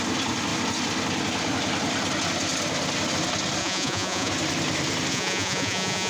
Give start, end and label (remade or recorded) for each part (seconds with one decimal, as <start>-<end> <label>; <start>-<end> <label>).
0.0-3.6 recorded; 3.6-4.3 remade; 4.3-5.1 recorded; 5.1-6.1 remade